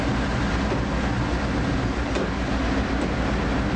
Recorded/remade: recorded